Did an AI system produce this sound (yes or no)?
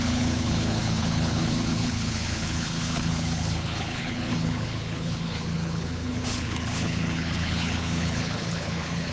yes